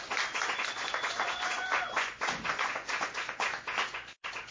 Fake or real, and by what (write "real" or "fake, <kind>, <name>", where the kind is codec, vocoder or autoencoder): fake, vocoder, Vocos